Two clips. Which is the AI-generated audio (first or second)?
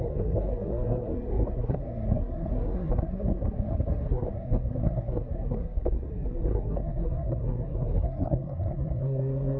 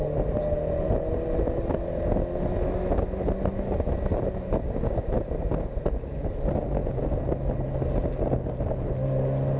first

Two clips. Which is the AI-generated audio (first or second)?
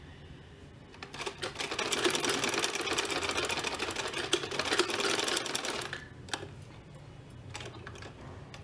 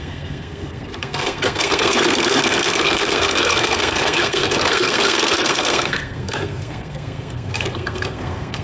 second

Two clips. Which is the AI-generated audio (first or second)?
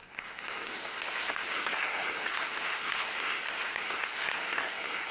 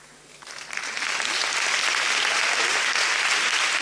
first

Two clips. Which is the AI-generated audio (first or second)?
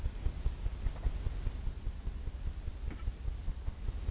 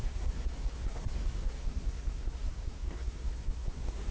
second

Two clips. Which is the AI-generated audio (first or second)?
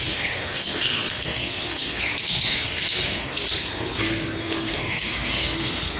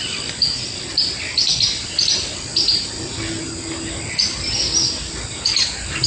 first